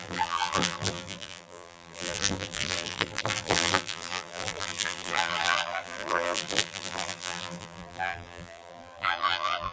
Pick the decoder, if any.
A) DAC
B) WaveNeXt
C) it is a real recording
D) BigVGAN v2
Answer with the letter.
D